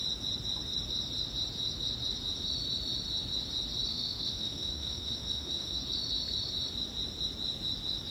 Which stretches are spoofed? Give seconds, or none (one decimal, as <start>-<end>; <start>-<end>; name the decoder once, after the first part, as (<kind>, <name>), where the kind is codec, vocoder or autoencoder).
3.9-5.8 (autoencoder, DAC-VAE)